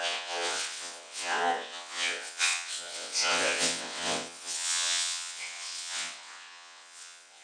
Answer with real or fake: fake